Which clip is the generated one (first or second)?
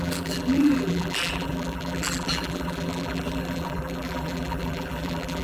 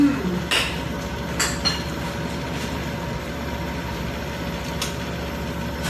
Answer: first